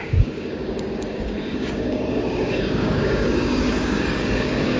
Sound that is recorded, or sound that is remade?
remade